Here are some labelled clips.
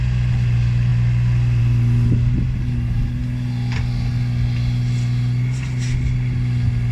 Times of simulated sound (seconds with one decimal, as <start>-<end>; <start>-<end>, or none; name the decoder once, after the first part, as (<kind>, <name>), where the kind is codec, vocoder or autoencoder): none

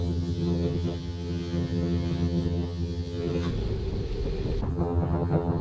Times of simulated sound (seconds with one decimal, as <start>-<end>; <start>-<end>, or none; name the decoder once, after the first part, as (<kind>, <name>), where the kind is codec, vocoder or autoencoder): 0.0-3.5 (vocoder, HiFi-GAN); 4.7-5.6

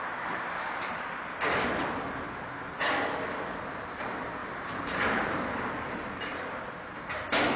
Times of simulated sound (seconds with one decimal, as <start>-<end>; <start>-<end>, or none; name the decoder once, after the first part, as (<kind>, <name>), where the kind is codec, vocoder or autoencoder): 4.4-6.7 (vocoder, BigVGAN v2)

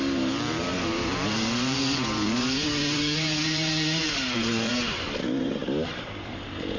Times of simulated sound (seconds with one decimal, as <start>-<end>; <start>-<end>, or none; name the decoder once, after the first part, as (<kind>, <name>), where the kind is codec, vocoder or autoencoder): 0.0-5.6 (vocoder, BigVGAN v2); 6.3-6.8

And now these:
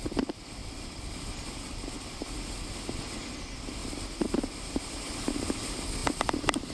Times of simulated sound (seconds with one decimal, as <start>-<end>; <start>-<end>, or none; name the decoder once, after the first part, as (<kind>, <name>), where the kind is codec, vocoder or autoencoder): 0.6-1.1 (vocoder, BigVGAN v2); 6.0-6.7

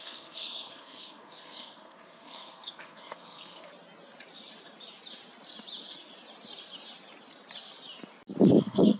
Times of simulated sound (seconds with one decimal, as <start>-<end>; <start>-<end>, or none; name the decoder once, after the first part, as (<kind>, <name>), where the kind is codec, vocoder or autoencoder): 0.0-3.7 (codec, SNAC); 8.6-9.0

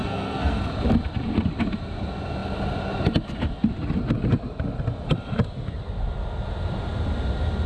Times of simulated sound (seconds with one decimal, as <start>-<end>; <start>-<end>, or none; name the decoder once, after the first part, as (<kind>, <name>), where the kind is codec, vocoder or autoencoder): 0.0-0.6 (codec, SNAC)

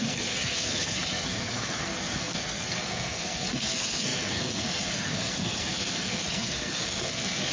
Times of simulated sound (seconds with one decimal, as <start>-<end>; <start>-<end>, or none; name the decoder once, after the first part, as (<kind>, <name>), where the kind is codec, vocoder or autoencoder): 0.0-7.5 (codec, SNAC)